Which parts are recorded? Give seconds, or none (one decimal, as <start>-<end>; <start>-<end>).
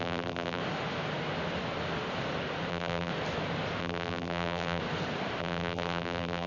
0.6-2.7; 3.1-3.8; 4.8-5.4